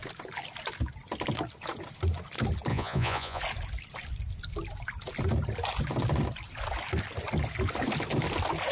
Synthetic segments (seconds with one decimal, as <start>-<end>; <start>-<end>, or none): 2.7-3.4